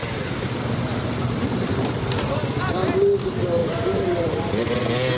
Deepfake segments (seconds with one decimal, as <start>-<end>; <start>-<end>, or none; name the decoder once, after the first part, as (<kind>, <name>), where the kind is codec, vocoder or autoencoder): 0.0-1.9 (vocoder, BigVGAN v2); 3.6-4.7